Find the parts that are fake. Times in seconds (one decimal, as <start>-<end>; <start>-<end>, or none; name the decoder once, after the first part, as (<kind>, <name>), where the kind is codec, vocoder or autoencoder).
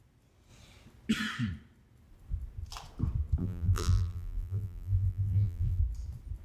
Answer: 3.4-5.8 (vocoder, BigVGAN v2)